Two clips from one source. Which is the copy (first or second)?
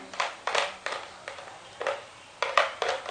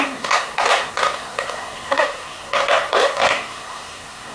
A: second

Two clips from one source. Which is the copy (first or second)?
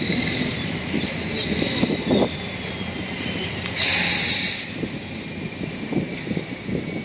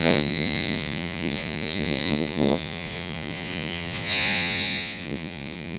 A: second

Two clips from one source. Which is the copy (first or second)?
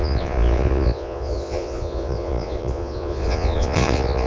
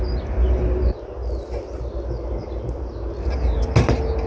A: first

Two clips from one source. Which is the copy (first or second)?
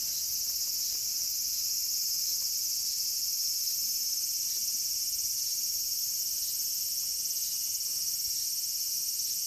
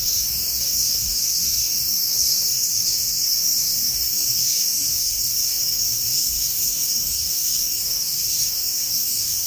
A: second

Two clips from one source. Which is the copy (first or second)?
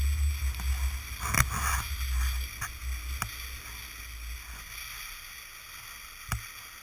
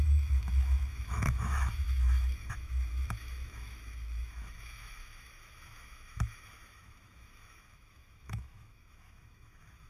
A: second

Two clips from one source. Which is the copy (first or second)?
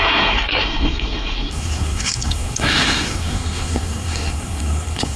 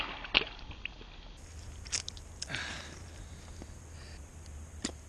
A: first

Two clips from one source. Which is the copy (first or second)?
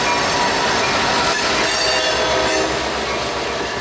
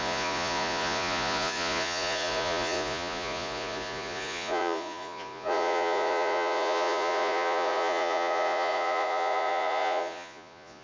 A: second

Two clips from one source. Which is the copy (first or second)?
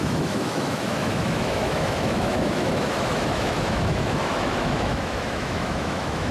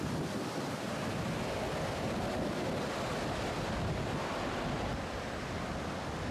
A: first